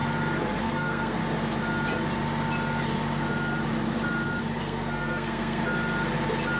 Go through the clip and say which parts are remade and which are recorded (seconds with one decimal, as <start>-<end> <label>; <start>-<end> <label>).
0.0-0.6 recorded; 0.6-1.2 remade; 1.2-4.4 recorded; 4.4-5.6 remade; 5.6-6.6 recorded